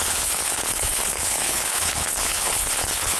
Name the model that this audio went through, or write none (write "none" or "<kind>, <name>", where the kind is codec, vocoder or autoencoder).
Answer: codec, HILCodec